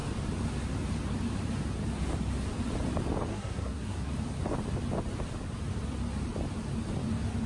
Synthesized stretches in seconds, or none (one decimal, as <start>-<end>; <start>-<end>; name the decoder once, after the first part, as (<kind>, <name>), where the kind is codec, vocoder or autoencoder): 3.3-4.1 (codec, SNAC)